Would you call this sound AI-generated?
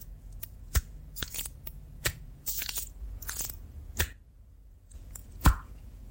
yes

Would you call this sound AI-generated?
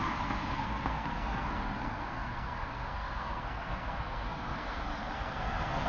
yes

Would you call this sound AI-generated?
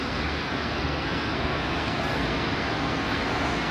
yes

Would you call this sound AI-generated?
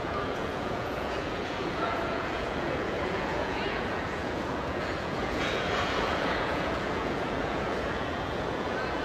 yes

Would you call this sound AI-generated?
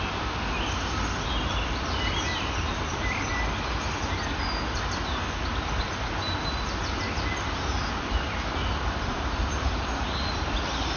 no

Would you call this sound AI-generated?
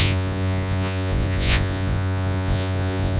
yes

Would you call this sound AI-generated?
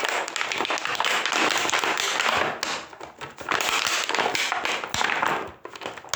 no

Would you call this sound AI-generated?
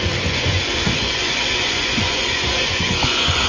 yes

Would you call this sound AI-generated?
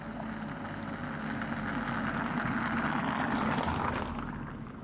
no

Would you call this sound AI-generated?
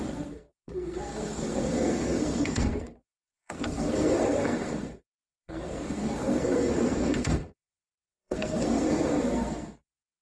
yes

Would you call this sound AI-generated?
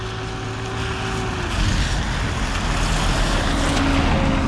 no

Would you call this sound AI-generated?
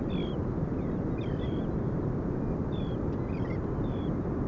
no